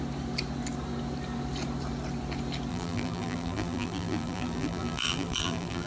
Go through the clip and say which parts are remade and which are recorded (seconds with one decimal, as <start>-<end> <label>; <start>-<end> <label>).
0.0-2.7 recorded; 2.7-5.9 remade